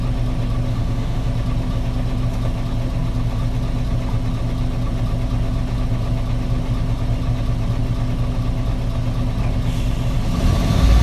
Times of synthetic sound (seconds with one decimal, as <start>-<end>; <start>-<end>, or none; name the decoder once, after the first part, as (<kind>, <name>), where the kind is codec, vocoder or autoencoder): 0.7-1.3 (autoencoder, DAC-VAE)